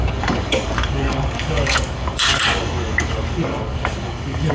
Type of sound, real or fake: fake